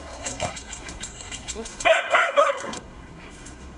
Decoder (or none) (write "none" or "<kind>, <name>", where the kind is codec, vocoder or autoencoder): codec, SNAC